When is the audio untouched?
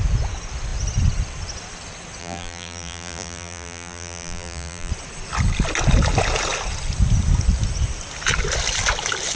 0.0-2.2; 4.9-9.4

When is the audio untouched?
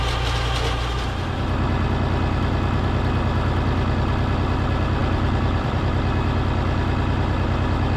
0.0-5.0; 5.8-8.0